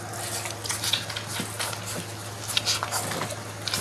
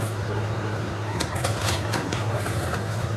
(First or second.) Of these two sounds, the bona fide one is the first